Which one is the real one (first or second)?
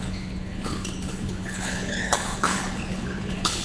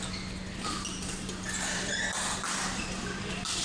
second